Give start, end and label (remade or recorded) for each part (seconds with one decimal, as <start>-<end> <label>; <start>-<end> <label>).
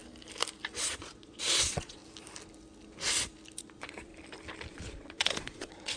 0.0-0.9 recorded; 0.9-2.0 remade; 2.0-3.6 recorded; 3.6-4.1 remade; 4.1-4.7 recorded; 4.7-6.0 remade